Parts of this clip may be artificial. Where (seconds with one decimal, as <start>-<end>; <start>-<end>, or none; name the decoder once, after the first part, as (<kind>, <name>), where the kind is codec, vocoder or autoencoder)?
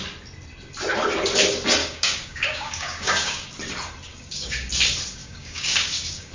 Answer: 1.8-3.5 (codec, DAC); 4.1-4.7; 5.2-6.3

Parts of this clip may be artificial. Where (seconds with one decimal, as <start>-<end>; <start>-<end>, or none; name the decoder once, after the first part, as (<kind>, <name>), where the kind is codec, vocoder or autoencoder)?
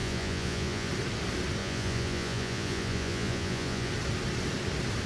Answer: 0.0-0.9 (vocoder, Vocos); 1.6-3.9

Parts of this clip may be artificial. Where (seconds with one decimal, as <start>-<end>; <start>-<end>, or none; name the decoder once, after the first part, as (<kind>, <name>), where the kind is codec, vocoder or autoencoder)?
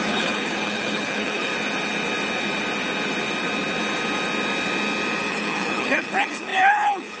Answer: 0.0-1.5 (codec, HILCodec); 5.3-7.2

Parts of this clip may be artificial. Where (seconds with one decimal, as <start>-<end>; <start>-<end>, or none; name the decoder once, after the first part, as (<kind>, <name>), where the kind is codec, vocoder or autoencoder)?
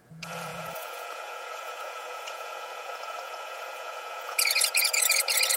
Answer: 0.0-5.6 (vocoder, Vocos)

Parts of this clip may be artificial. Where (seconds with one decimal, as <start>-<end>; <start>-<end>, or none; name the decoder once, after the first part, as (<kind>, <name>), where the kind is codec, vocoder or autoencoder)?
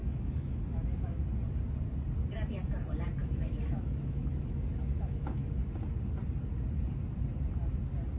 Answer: 0.0-1.2 (autoencoder, DAC-VAE); 3.2-5.5